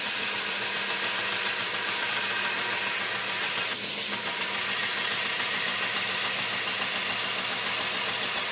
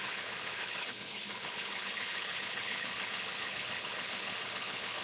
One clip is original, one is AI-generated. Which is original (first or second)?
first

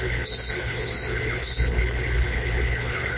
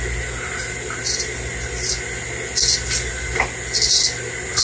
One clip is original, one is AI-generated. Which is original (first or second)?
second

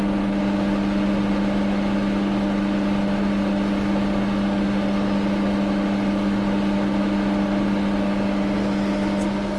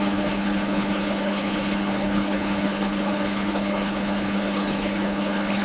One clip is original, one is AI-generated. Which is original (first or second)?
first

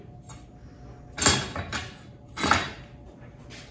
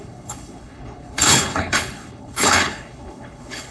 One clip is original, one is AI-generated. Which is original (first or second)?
first